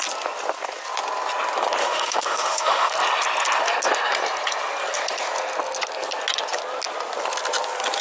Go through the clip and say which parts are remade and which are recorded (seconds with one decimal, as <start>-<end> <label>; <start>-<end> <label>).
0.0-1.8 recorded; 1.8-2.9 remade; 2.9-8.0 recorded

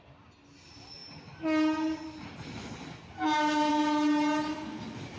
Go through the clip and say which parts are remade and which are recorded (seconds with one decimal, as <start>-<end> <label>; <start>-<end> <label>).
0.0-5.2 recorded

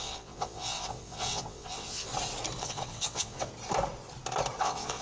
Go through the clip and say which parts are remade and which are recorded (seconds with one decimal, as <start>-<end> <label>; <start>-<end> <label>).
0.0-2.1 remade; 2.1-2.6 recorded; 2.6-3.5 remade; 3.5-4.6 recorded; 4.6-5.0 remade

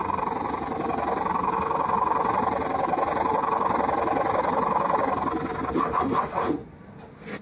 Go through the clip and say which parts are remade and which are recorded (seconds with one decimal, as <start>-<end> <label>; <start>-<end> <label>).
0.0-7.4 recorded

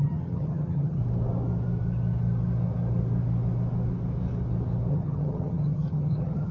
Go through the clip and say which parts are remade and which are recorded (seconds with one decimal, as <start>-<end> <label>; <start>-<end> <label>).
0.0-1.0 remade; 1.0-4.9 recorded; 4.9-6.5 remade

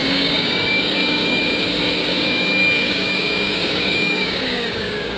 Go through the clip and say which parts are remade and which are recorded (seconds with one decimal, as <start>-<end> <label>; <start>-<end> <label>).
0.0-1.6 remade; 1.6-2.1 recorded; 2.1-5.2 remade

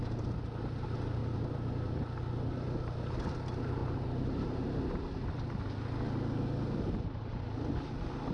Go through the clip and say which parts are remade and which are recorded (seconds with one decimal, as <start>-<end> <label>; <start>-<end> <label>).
0.0-3.8 recorded; 3.8-4.8 remade; 4.8-8.3 recorded

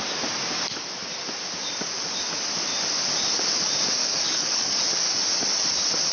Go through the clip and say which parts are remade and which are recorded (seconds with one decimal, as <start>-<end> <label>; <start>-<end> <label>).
0.0-4.0 recorded; 4.0-4.8 remade; 4.8-6.1 recorded